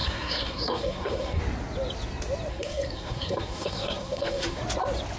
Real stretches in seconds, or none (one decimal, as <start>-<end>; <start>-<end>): 1.4-2.5; 4.6-5.2